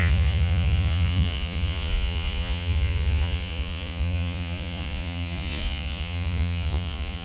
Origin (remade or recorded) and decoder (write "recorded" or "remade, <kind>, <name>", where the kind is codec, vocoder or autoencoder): remade, vocoder, Vocos